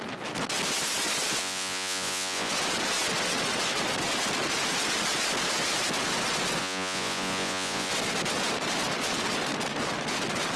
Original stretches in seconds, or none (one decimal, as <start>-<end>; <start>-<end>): 0.0-1.4; 2.5-6.6; 7.9-10.6